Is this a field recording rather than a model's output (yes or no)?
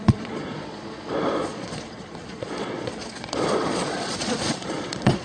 no